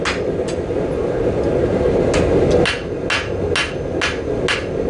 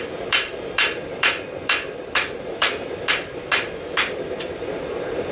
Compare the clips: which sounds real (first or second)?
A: first